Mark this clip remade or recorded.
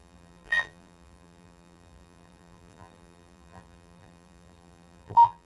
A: remade